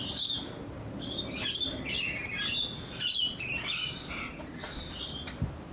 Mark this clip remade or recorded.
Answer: recorded